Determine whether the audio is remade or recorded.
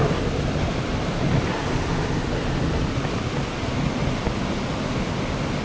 recorded